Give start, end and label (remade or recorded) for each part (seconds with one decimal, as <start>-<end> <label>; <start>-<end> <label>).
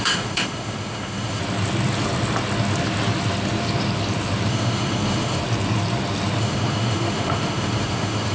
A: 0.0-1.4 remade; 1.4-4.5 recorded; 4.5-5.4 remade; 5.4-6.4 recorded; 6.4-8.3 remade